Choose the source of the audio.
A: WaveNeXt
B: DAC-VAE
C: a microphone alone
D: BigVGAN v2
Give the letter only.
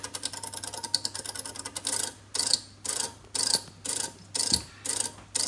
C